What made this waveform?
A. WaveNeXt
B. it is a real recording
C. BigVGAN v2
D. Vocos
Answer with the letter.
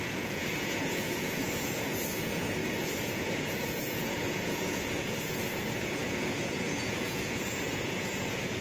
D